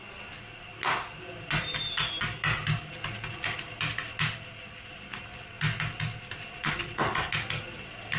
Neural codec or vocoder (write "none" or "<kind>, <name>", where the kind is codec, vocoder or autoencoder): none